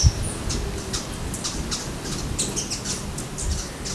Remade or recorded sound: recorded